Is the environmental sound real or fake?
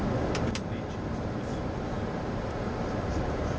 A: fake